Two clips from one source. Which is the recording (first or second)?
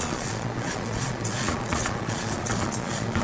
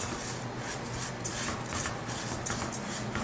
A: second